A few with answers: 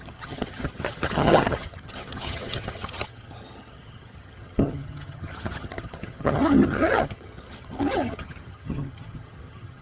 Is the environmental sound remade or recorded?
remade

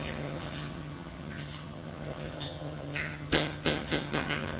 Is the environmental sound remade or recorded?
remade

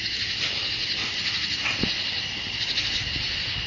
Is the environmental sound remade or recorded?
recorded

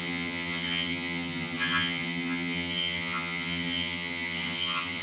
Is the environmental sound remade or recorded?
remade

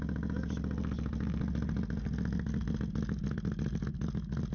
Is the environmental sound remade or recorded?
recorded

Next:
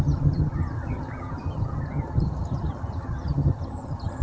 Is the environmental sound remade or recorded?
remade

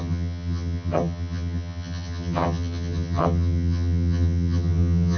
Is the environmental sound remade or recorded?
remade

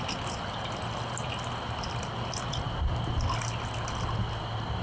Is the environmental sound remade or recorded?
recorded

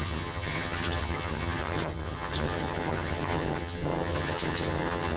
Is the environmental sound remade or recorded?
remade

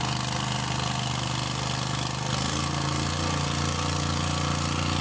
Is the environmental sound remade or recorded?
recorded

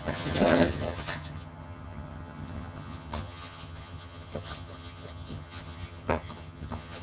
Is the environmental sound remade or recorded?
remade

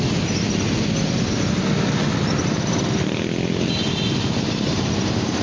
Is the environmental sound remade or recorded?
recorded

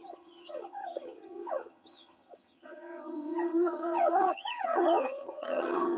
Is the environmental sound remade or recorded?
remade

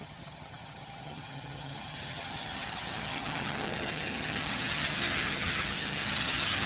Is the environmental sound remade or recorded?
remade